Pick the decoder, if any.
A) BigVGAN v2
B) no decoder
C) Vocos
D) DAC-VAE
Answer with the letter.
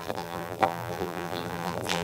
A